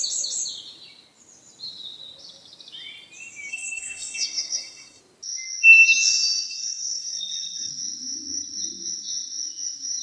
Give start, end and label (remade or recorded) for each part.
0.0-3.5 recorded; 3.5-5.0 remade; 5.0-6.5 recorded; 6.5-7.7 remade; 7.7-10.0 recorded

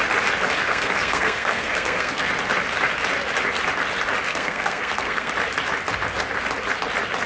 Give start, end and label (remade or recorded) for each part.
0.0-0.6 recorded; 0.6-2.3 remade; 2.3-4.3 recorded; 4.3-5.3 remade; 5.3-7.3 recorded

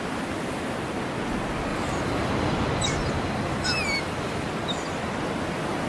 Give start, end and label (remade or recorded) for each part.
0.0-1.7 recorded; 1.7-4.5 remade; 4.5-5.9 recorded

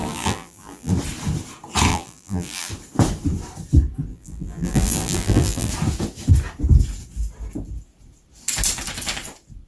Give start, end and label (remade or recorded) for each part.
0.0-0.9 remade; 0.9-1.9 recorded; 1.9-2.7 remade; 2.7-4.1 recorded; 4.1-5.7 remade; 5.7-9.7 recorded

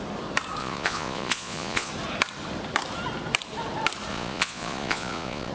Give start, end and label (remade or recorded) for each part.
0.0-0.6 recorded; 0.6-1.9 remade; 1.9-4.1 recorded; 4.1-5.5 remade

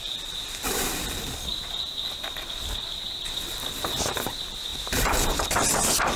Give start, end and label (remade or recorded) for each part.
0.0-1.5 remade; 1.5-2.1 recorded; 2.1-6.2 remade

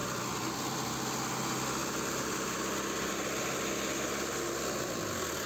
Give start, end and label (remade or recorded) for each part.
0.0-0.9 remade; 0.9-1.8 recorded; 1.8-3.1 remade; 3.1-5.5 recorded

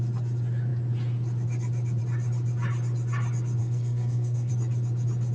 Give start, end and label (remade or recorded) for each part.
0.0-3.6 recorded; 3.6-4.5 remade; 4.5-5.3 recorded